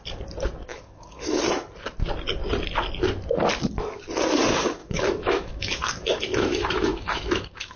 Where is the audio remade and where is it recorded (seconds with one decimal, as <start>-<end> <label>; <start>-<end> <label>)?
0.0-0.7 recorded; 0.7-1.4 remade; 1.4-4.8 recorded; 4.8-7.8 remade

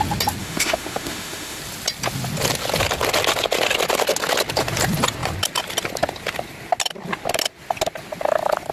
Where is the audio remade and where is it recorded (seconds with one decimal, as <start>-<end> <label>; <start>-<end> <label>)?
0.0-0.4 recorded; 0.4-1.6 remade; 1.6-8.7 recorded

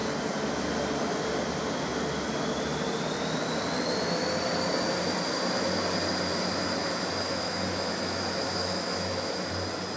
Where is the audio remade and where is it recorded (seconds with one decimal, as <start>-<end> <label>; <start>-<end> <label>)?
0.0-6.8 recorded; 6.8-9.5 remade; 9.5-10.0 recorded

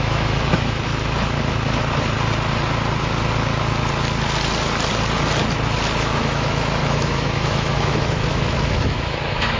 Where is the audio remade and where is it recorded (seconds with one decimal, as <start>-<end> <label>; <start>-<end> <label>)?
0.0-0.9 remade; 0.9-6.0 recorded; 6.0-9.6 remade

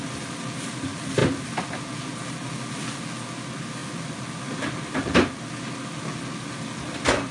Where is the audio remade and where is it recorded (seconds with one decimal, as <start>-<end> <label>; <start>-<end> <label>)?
0.0-7.3 recorded

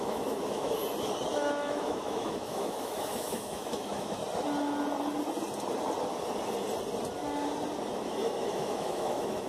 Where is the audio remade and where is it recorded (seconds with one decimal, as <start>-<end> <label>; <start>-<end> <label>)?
0.0-0.8 remade; 0.8-1.3 recorded; 1.3-4.2 remade; 4.2-7.9 recorded; 7.9-9.5 remade

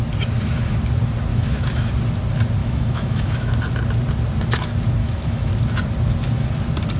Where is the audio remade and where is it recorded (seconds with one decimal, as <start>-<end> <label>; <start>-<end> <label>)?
0.0-1.3 recorded; 1.3-1.9 remade; 1.9-2.6 recorded; 2.6-3.5 remade; 3.5-5.0 recorded; 5.0-5.5 remade; 5.5-7.0 recorded

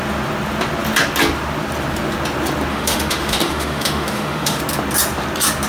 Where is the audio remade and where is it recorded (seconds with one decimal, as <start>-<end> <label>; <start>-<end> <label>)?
0.0-2.7 recorded; 2.7-4.6 remade; 4.6-5.7 recorded